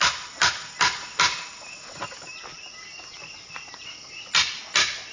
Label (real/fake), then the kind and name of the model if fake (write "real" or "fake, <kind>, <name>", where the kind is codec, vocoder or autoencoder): real